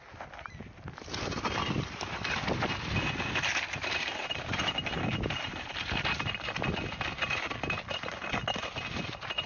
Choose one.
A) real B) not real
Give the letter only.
A